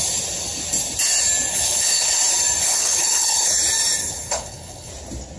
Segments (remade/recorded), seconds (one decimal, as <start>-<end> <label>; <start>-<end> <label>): 0.0-1.5 recorded; 1.5-2.2 remade; 2.2-2.6 recorded; 2.6-3.6 remade; 3.6-4.0 recorded; 4.0-4.9 remade; 4.9-5.4 recorded